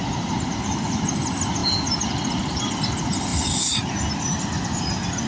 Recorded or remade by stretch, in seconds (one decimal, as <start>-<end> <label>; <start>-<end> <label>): 0.0-5.3 recorded